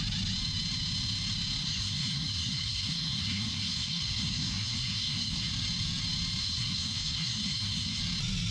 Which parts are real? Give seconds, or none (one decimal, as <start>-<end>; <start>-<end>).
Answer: 0.0-1.6; 5.5-6.4; 8.0-8.5